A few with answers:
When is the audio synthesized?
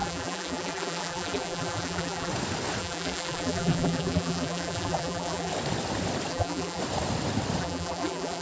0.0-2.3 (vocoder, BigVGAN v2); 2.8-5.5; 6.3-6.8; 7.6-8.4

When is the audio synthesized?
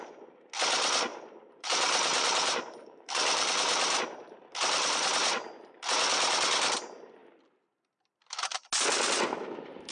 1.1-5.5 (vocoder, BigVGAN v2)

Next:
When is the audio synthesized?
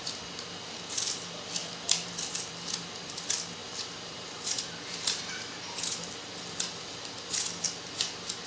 3.6-7.3 (vocoder, BigVGAN v2)